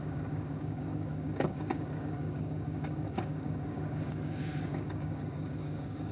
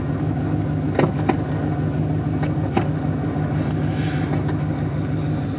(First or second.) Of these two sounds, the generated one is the first